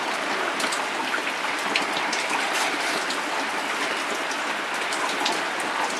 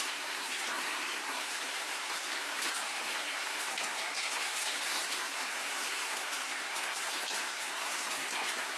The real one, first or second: first